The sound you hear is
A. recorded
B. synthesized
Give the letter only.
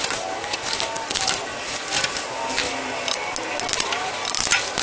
A